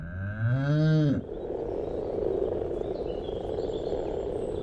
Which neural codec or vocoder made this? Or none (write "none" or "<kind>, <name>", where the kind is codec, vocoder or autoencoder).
none